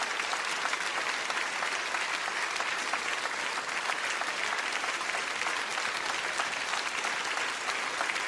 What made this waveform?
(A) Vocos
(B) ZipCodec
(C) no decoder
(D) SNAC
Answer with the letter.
C